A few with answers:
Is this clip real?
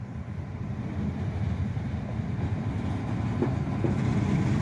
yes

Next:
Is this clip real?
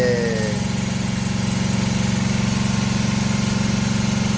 yes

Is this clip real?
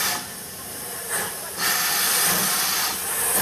yes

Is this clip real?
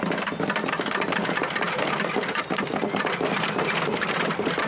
yes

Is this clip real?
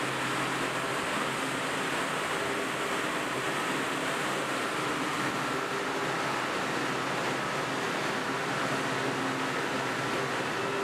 yes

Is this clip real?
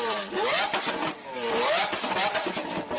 no